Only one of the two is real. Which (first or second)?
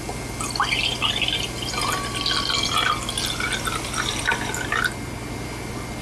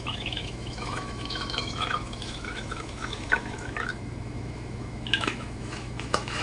first